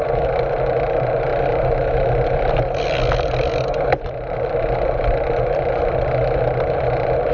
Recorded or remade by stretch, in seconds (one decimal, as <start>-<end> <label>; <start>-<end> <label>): 0.0-7.3 recorded